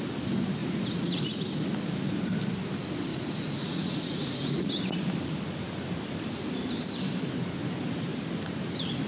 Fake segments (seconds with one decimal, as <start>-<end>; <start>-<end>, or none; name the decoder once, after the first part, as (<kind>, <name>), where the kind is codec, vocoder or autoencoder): 0.6-1.4 (vocoder, Vocos); 3.1-4.7